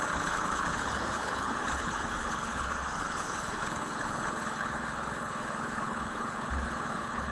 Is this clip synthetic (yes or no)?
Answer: yes